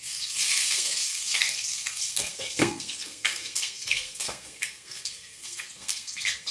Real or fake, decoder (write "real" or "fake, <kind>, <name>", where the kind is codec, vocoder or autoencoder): fake, codec, SNAC